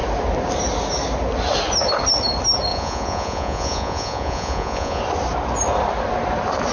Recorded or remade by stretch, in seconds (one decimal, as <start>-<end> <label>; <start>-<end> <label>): 0.0-2.7 recorded; 2.7-5.0 remade; 5.0-6.7 recorded